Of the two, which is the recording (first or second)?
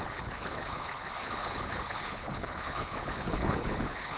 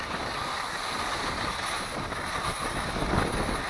second